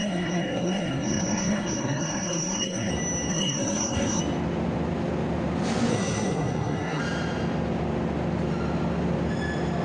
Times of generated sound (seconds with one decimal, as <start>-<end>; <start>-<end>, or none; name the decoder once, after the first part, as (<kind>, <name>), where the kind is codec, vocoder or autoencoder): 0.0-2.9 (codec, SNAC); 3.3-4.2; 5.9-7.0